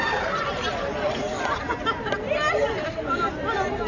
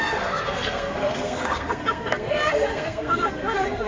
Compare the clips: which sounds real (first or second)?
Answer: first